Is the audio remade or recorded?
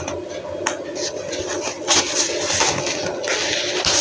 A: recorded